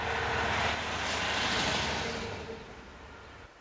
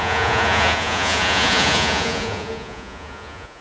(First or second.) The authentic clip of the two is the first